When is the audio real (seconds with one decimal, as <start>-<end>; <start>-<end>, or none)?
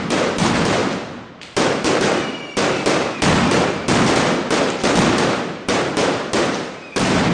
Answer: 0.8-5.2